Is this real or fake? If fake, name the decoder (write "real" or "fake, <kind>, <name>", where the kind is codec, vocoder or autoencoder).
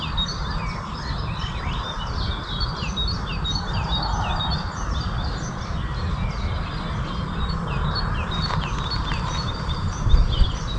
real